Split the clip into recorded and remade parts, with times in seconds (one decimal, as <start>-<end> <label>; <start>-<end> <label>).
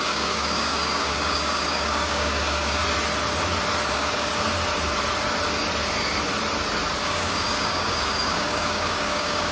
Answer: 0.0-2.8 remade; 2.8-3.9 recorded; 3.9-4.3 remade; 4.3-7.0 recorded; 7.0-9.5 remade